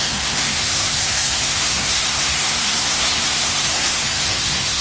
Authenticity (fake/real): fake